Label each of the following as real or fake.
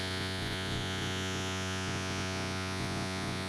fake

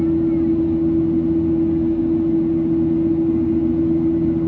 real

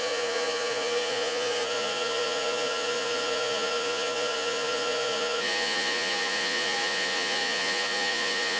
fake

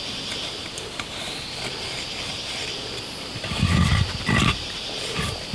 fake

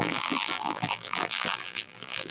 fake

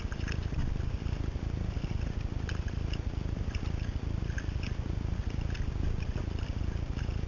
real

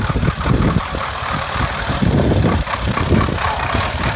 fake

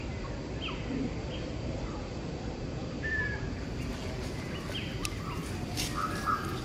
real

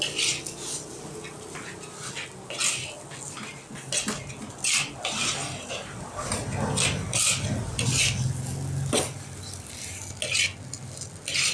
real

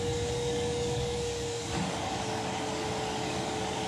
fake